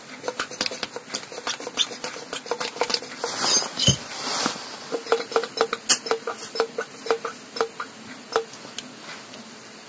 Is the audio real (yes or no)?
yes